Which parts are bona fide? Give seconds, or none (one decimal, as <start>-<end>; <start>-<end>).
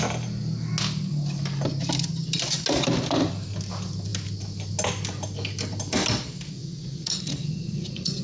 0.0-6.6